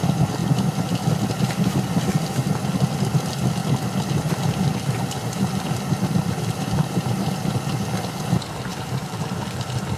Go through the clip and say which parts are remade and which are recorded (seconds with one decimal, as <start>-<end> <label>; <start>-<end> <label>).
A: 0.0-10.0 recorded